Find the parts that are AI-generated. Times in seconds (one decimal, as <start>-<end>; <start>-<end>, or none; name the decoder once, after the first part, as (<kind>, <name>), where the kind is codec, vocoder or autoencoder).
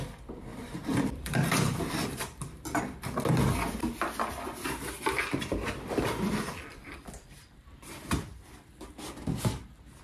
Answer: 0.5-2.8 (vocoder, BigVGAN v2); 6.7-8.6